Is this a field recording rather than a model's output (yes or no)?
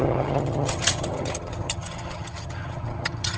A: no